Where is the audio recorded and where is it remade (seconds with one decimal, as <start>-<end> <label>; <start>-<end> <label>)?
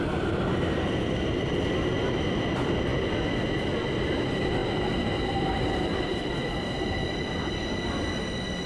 0.0-4.6 recorded; 4.6-7.4 remade; 7.4-8.7 recorded